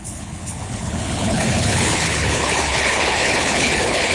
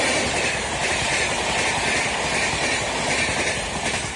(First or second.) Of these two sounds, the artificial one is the first